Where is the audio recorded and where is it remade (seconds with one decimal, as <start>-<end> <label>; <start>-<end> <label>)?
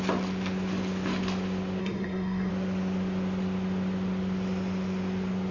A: 0.0-1.8 recorded; 1.8-2.5 remade; 2.5-5.5 recorded